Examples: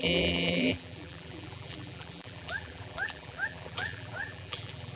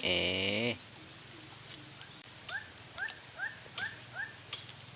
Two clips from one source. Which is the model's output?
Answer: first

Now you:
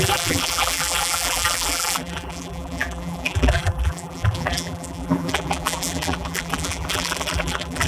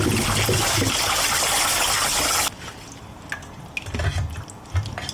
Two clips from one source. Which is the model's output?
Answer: first